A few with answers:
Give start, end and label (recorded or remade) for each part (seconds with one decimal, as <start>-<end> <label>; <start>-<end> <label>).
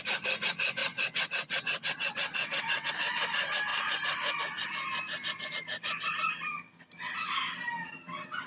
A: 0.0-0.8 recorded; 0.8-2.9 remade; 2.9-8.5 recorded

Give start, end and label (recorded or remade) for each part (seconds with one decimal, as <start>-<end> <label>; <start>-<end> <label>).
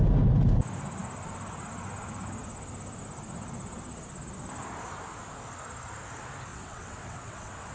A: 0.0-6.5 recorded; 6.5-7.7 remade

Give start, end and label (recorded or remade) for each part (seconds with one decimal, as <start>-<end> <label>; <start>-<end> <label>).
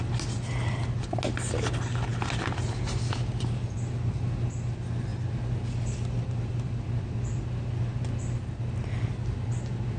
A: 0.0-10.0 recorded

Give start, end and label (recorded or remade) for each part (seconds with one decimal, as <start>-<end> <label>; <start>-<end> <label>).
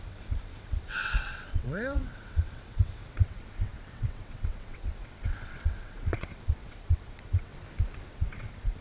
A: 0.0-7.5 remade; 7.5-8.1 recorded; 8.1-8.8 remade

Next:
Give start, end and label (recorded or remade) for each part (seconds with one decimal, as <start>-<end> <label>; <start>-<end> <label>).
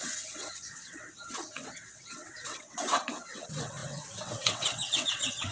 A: 0.0-5.5 remade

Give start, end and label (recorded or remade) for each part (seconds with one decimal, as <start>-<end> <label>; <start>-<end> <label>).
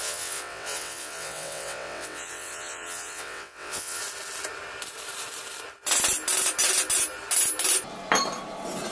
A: 0.0-4.0 remade; 4.0-8.9 recorded